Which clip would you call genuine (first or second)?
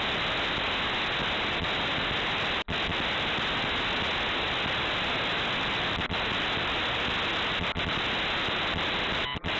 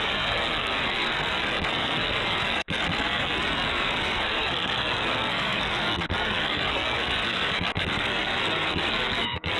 first